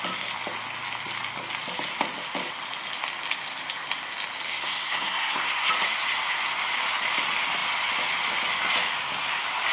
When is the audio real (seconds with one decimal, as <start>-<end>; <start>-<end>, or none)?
0.0-4.5; 5.7-9.7